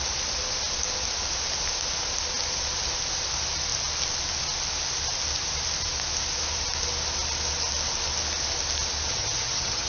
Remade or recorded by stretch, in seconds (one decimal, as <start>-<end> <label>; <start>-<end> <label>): 0.0-9.1 recorded; 9.1-9.9 remade